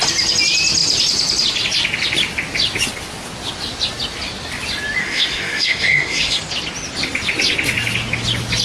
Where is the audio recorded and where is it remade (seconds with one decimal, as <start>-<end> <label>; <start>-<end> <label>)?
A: 0.0-5.0 recorded; 5.0-6.4 remade; 6.4-8.6 recorded